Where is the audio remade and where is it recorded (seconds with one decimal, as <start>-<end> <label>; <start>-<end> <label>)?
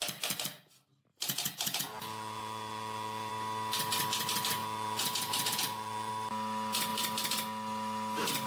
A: 0.0-1.1 recorded; 1.1-3.3 remade; 3.3-4.6 recorded; 4.6-6.1 remade; 6.1-8.5 recorded